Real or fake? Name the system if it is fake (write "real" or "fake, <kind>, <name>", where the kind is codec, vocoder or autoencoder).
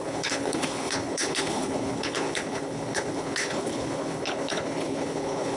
fake, codec, HILCodec